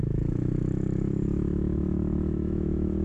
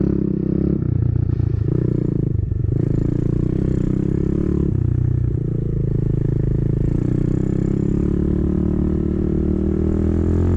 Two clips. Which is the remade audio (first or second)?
first